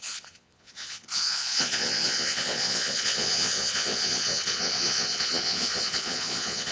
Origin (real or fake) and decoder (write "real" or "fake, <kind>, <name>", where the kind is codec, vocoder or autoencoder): fake, vocoder, Vocos